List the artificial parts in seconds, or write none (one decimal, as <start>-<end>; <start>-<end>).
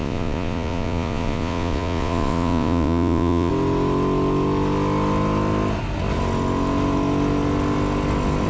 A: 0.0-3.5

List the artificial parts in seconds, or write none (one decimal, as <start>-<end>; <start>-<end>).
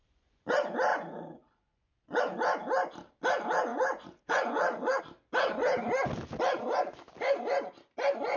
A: 0.0-0.5; 0.9-2.2; 3.7-5.0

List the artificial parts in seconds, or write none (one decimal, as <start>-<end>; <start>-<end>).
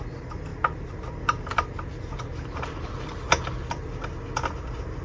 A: none